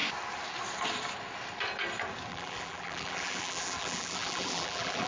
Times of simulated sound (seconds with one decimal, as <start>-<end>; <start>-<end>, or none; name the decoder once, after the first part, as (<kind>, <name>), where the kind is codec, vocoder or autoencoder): 2.3-5.1 (vocoder, BigVGAN v2)